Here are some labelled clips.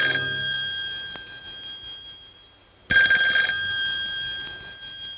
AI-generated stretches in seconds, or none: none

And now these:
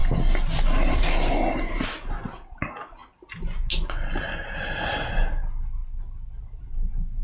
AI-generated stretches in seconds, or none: none

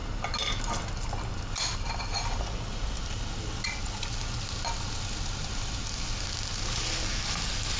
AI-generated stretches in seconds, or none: none

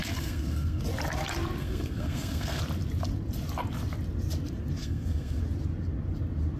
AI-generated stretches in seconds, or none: 0.0-0.8 (codec, SNAC); 1.6-2.6; 4.8-5.4

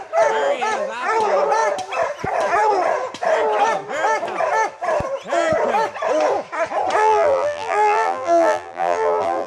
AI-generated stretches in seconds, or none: 7.0-9.5 (vocoder, BigVGAN v2)

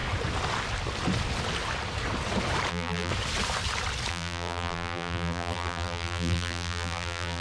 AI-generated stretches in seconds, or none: 2.7-3.1 (vocoder, BigVGAN v2); 4.1-7.4

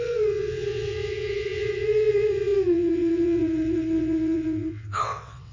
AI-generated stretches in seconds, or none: 0.0-5.5 (vocoder, WaveNeXt)